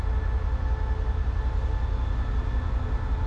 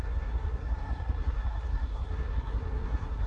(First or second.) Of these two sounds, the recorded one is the first